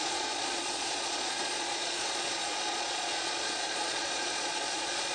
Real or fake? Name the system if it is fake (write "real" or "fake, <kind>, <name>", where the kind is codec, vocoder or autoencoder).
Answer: fake, vocoder, Vocos